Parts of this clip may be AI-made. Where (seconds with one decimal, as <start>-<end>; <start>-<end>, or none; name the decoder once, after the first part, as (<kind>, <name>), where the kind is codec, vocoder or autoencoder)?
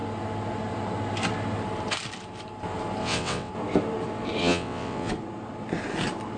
3.0-3.5 (vocoder, WaveNeXt); 4.4-5.1